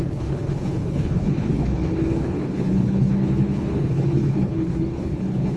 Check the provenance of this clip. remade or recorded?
remade